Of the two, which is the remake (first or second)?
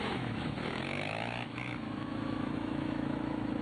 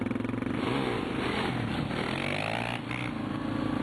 first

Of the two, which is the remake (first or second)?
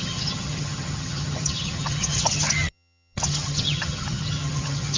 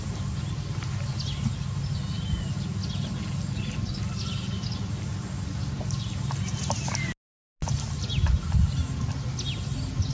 first